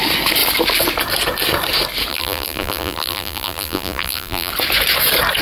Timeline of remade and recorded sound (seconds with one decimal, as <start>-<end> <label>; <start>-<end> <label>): 0.0-2.1 recorded; 2.1-4.5 remade; 4.5-5.4 recorded